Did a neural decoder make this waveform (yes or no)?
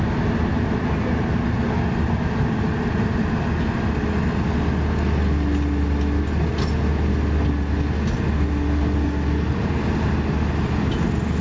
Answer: no